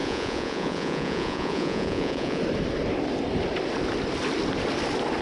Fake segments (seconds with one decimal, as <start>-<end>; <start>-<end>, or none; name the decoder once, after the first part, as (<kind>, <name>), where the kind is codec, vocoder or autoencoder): 0.0-2.4 (vocoder, Vocos)